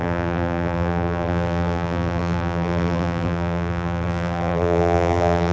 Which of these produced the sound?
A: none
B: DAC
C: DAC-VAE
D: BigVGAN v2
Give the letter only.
D